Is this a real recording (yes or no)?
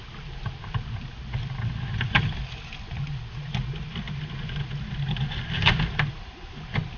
yes